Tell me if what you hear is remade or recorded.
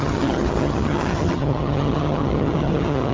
remade